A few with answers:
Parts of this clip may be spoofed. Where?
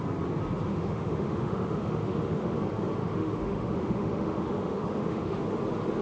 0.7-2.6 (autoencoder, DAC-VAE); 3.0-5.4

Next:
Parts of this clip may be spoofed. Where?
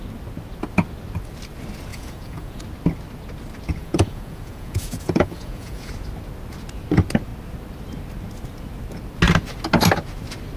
1.9-2.6 (vocoder, Vocos); 3.8-5.9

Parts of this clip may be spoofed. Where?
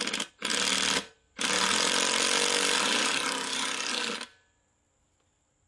none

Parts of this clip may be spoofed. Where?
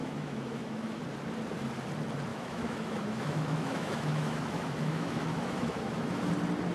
0.0-1.0 (autoencoder, DAC-VAE); 2.3-6.3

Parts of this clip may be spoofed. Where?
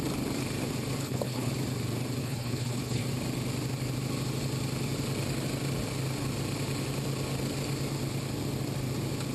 1.0-1.5 (codec, HILCodec); 2.2-3.0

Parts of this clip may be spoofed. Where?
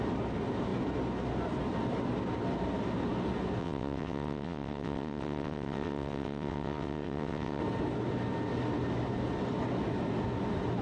3.6-7.6 (vocoder, WaveNeXt)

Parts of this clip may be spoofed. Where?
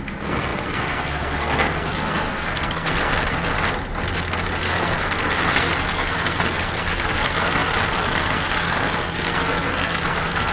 0.0-3.5 (codec, SNAC); 4.6-10.5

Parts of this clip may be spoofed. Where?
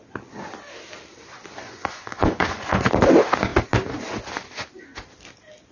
1.6-2.9 (vocoder, Vocos)